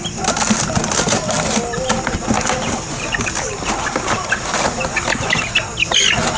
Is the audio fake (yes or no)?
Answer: no